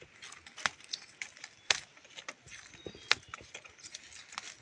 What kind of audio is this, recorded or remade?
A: recorded